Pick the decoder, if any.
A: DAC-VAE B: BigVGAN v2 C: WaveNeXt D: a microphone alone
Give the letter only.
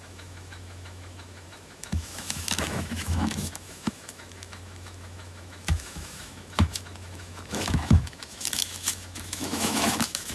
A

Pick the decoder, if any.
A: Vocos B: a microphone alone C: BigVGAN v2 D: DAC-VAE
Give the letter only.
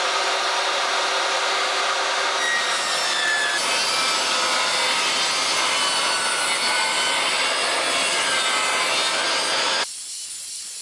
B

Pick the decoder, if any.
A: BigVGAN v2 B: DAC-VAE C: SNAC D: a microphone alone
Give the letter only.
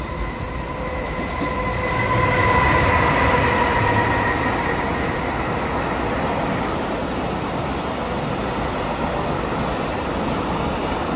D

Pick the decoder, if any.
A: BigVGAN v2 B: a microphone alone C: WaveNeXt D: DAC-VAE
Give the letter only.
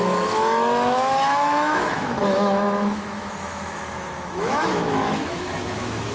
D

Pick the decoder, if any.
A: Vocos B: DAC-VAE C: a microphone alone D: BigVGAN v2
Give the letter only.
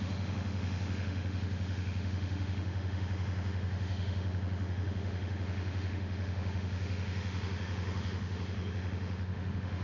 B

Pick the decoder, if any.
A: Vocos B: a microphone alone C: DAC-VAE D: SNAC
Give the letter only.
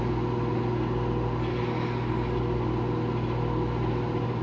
B